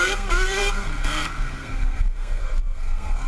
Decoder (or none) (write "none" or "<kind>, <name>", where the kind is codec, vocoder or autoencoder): codec, SNAC